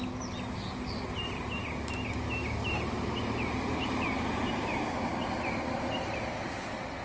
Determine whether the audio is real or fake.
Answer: real